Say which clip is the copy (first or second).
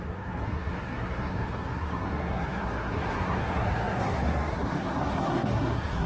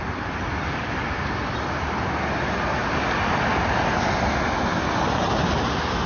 first